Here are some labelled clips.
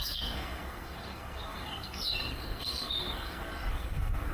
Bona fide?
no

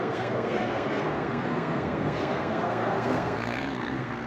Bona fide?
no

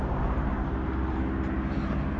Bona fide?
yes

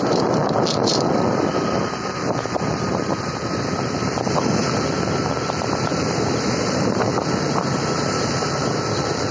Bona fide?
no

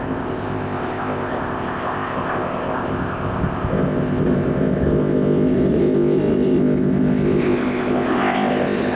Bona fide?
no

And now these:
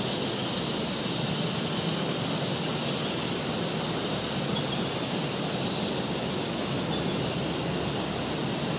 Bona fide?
yes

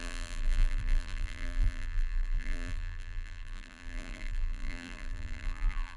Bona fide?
no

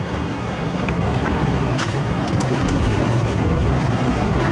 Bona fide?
no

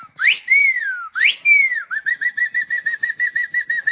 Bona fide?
yes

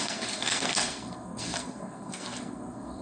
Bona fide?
no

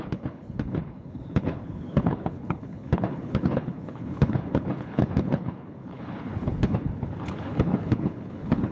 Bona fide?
no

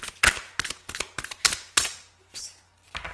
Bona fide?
yes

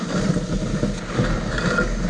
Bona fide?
yes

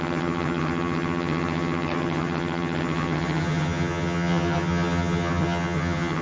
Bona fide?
no